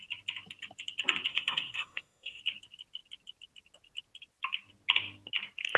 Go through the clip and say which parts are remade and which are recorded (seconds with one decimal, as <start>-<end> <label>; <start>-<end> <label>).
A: 0.0-1.3 recorded; 1.3-2.4 remade; 2.4-5.8 recorded